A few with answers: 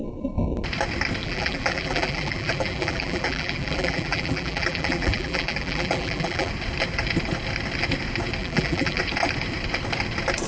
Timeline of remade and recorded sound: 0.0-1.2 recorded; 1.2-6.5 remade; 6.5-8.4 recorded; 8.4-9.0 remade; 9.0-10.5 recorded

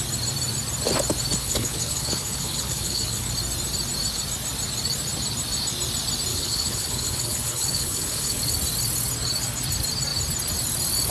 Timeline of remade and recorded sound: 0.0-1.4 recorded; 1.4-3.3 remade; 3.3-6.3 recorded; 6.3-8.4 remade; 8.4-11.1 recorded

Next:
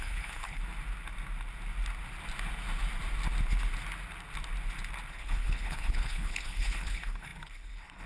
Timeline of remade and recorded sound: 0.0-0.6 remade; 0.6-5.1 recorded; 5.1-8.1 remade